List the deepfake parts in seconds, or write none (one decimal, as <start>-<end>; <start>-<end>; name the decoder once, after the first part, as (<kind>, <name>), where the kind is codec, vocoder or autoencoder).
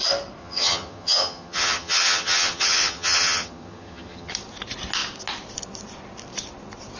0.4-4.3 (vocoder, HiFi-GAN)